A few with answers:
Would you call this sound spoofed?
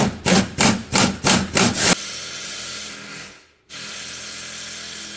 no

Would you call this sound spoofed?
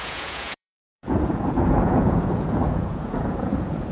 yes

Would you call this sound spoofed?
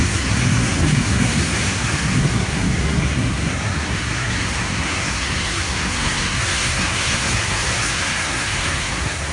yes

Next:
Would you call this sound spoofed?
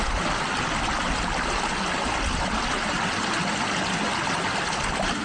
no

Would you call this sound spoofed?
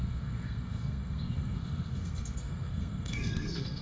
yes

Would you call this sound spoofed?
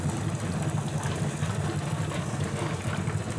no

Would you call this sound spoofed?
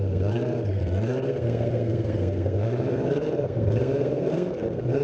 yes